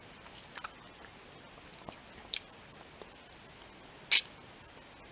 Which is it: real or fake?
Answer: real